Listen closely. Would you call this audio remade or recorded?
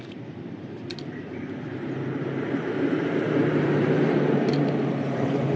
remade